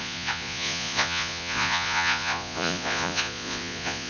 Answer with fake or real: fake